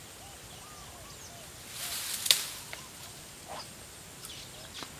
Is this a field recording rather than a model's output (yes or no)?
yes